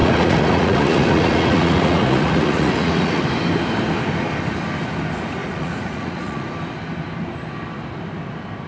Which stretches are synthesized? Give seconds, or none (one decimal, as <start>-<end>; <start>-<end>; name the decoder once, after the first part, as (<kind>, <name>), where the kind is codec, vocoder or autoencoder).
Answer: 0.0-3.2 (vocoder, Vocos); 5.4-6.5